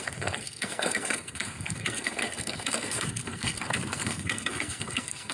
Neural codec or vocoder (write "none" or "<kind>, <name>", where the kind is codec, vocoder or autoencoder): codec, SNAC